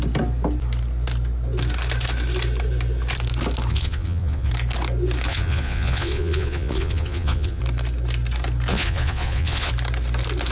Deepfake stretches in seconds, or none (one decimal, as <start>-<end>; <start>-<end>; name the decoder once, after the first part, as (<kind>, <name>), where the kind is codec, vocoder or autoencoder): 3.7-4.5 (vocoder, Vocos); 5.3-7.6; 8.7-9.7